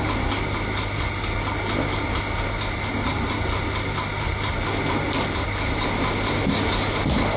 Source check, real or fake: real